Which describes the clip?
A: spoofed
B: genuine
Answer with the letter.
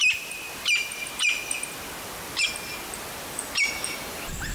B